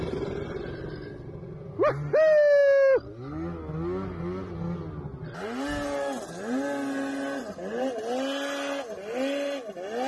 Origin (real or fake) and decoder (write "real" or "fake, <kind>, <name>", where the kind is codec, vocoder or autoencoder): real